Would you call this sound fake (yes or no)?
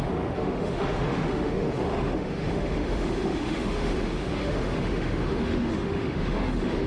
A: yes